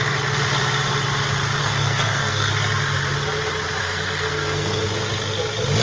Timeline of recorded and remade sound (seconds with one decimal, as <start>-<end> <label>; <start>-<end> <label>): 0.0-1.6 recorded; 1.6-2.5 remade; 2.5-3.8 recorded; 3.8-4.8 remade; 4.8-5.8 recorded